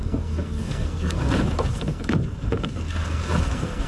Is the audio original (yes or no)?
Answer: no